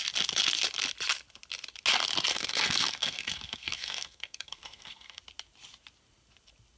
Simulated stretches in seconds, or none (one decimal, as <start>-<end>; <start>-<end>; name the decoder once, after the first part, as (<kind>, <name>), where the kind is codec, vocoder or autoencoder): 2.3-5.2 (codec, SNAC)